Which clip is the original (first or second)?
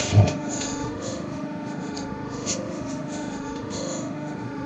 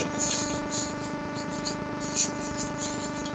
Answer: second